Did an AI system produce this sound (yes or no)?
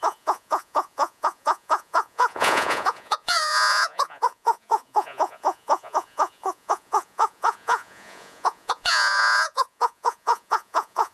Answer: yes